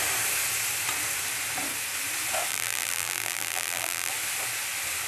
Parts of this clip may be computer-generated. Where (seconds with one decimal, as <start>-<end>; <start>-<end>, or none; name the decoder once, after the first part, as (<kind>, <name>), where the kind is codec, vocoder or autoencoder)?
2.5-4.1 (vocoder, BigVGAN v2)